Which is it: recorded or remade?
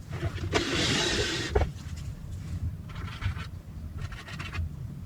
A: recorded